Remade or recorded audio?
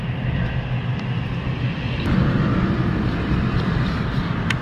recorded